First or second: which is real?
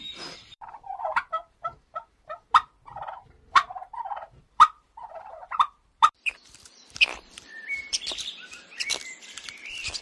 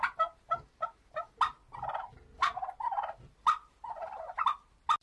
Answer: second